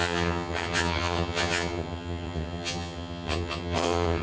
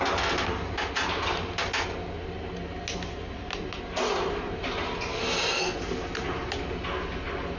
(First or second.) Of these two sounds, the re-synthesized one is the first